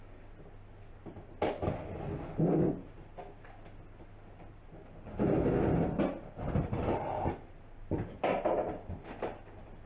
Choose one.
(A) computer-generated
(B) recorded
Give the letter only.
B